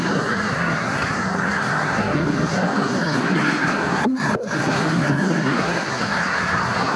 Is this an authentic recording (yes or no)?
no